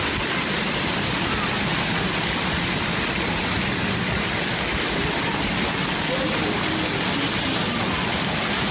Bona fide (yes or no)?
yes